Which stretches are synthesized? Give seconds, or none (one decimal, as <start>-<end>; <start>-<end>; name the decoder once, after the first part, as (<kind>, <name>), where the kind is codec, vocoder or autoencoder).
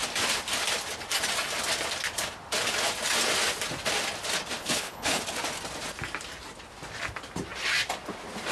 4.6-5.2 (codec, HILCodec)